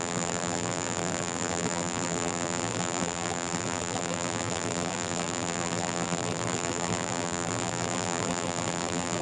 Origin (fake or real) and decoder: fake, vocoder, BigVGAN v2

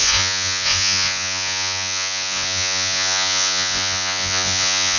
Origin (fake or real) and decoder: fake, vocoder, Vocos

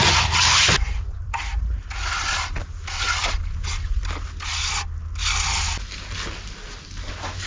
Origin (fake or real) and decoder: real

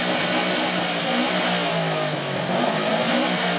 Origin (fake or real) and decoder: real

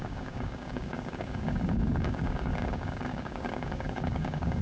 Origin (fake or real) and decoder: fake, codec, DAC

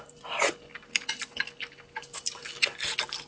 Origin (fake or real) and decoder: real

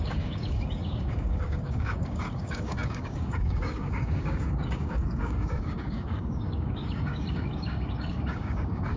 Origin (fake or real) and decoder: fake, codec, DAC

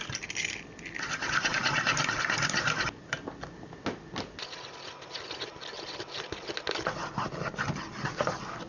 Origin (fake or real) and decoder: real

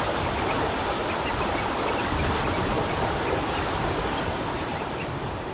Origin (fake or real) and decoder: real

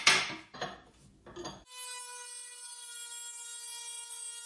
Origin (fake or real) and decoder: real